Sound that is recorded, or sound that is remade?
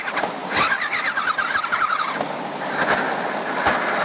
recorded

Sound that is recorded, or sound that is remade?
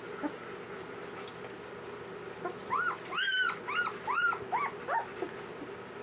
recorded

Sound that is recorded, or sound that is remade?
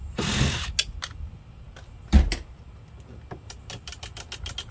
recorded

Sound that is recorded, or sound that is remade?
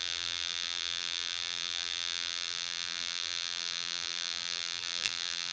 remade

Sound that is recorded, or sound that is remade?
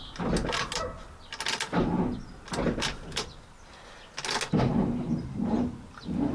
recorded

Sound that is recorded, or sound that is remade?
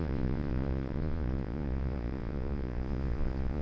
remade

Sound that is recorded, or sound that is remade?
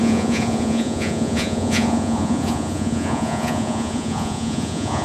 remade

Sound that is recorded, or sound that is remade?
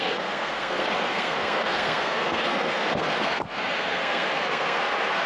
remade